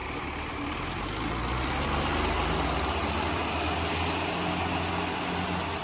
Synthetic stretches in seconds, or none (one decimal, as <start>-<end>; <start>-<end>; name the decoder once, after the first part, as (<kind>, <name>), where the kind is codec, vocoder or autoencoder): none